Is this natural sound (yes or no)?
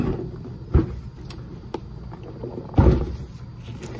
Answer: yes